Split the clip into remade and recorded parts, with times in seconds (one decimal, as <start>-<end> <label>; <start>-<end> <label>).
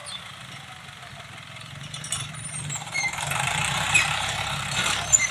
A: 0.0-1.8 recorded; 1.8-4.4 remade; 4.4-5.3 recorded